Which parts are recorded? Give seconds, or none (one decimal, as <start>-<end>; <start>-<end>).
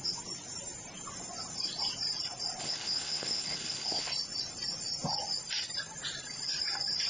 0.0-2.6; 4.1-7.1